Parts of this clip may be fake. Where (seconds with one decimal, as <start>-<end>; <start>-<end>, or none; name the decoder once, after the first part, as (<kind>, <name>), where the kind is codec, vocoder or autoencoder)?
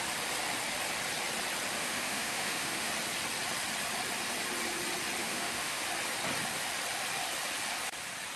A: 1.8-2.9 (autoencoder, DAC-VAE); 5.2-5.8